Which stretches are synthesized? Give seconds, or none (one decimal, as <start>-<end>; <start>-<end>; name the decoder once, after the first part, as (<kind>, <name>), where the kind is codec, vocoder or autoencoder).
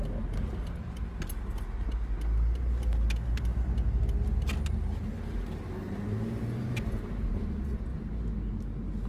none